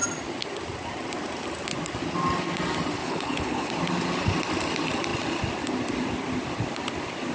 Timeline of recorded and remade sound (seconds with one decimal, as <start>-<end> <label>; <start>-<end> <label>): 0.0-3.0 recorded; 3.0-3.7 remade; 3.7-7.3 recorded